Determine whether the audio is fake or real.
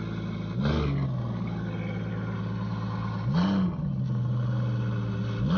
real